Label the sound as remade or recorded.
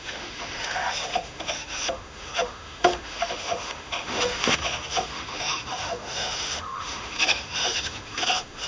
remade